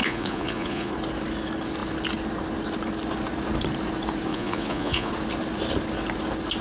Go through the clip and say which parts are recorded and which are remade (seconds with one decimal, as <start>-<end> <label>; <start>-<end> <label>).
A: 0.0-0.9 remade; 0.9-4.3 recorded; 4.3-5.1 remade; 5.1-6.6 recorded